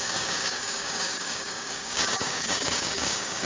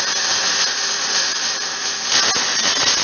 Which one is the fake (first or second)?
first